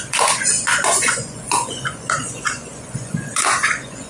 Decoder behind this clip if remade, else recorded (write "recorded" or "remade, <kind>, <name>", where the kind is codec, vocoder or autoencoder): remade, vocoder, Vocos